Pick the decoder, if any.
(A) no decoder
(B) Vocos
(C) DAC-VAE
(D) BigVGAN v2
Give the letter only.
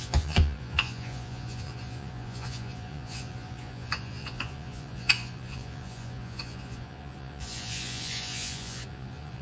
B